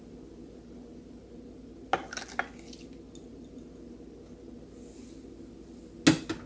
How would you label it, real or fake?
real